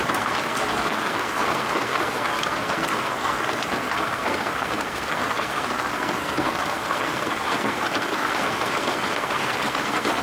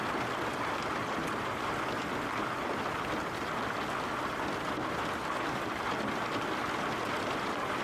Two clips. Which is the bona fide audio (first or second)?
second